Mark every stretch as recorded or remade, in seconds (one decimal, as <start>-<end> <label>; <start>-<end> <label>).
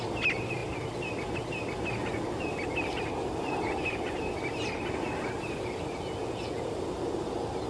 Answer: 0.0-6.2 recorded; 6.2-6.7 remade; 6.7-7.7 recorded